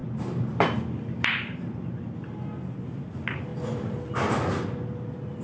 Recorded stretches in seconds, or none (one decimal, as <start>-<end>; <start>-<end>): 0.0-5.4